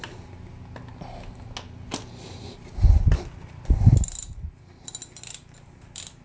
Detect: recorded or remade recorded